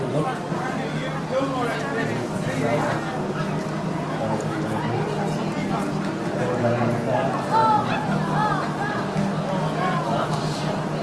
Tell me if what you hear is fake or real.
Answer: real